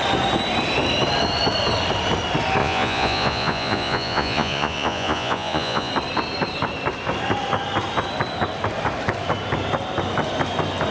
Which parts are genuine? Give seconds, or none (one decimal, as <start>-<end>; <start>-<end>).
0.0-2.6; 5.9-10.9